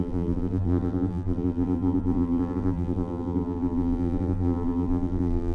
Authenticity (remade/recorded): remade